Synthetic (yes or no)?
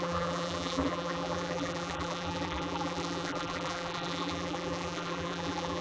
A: yes